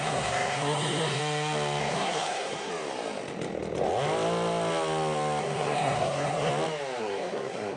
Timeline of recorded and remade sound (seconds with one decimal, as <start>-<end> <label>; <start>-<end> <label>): 0.0-1.2 remade; 1.2-1.8 recorded; 1.8-2.7 remade; 2.7-5.4 recorded; 5.4-6.5 remade; 6.5-7.0 recorded; 7.0-7.8 remade